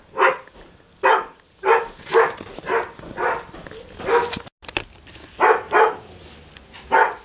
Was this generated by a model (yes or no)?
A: no